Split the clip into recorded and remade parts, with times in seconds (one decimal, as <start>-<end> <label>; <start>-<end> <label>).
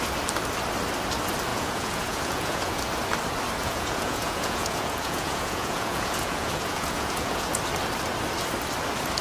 0.0-1.5 recorded; 1.5-2.8 remade; 2.8-3.6 recorded; 3.6-7.6 remade; 7.6-9.2 recorded